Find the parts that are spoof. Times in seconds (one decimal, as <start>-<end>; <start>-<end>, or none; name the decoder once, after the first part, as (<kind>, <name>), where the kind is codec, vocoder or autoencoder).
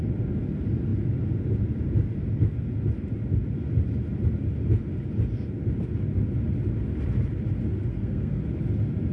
7.9-8.4 (codec, SNAC)